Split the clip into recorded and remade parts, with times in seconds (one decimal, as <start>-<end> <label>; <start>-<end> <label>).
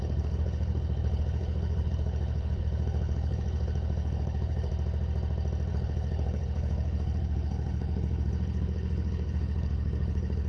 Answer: 0.0-4.7 remade; 4.7-5.7 recorded; 5.7-10.5 remade